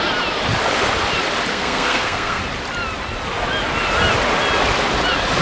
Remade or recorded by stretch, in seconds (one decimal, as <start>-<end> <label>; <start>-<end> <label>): 0.0-1.5 recorded; 1.5-2.4 remade; 2.4-5.4 recorded